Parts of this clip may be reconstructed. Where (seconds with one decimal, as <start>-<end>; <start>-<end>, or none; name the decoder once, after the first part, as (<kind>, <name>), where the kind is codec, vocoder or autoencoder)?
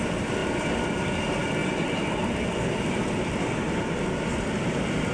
0.0-5.1 (vocoder, BigVGAN v2)